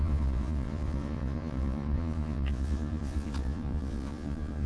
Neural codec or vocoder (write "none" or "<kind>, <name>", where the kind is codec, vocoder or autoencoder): vocoder, Vocos